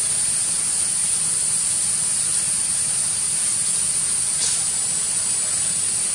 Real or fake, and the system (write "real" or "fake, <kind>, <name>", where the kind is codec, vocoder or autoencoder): real